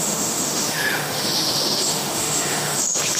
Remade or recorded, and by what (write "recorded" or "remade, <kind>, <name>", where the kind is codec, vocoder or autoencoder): remade, autoencoder, DAC-VAE